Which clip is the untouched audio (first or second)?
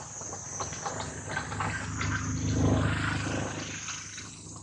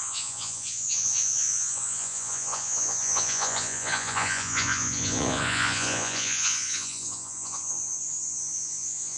first